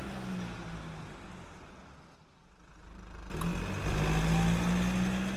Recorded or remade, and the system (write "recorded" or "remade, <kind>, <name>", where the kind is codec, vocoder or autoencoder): recorded